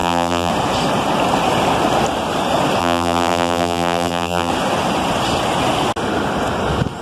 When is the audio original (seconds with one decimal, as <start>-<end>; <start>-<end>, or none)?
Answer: 0.5-2.8; 4.5-7.0